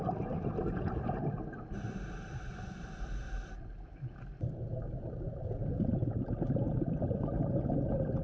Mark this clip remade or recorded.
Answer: recorded